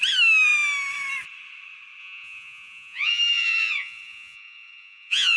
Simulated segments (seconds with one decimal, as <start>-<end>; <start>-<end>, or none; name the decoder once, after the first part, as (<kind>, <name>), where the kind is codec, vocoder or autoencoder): 2.0-5.4 (vocoder, Vocos)

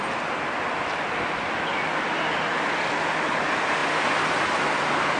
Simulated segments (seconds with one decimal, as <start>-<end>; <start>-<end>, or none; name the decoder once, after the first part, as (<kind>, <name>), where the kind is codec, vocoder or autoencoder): none

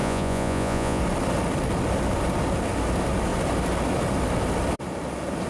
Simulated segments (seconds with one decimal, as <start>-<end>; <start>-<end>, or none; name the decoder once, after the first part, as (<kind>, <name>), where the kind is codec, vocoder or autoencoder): 0.0-1.0 (vocoder, Vocos)

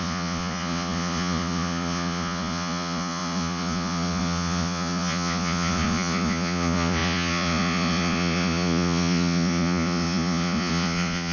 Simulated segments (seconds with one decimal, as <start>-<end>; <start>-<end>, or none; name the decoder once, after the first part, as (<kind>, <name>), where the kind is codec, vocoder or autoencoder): 0.0-11.3 (vocoder, Vocos)

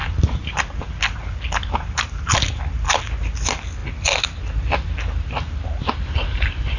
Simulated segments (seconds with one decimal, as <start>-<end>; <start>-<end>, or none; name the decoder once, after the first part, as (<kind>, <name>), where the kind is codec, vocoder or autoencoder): none